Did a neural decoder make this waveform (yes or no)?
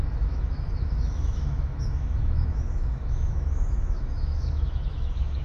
yes